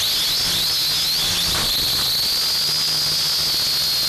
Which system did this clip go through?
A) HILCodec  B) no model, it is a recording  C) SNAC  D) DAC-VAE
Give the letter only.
B